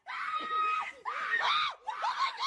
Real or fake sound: real